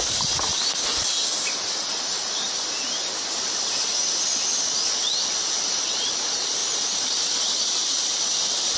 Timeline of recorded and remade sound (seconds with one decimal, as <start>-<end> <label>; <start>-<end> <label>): 0.0-0.5 remade; 0.5-5.7 recorded; 5.7-8.8 remade